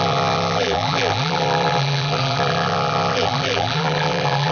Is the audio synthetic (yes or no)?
yes